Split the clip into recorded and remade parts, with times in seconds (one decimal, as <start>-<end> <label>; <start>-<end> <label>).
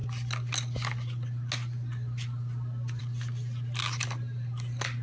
0.0-5.0 recorded